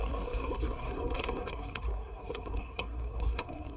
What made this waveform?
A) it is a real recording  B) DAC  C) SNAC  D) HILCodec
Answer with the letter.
C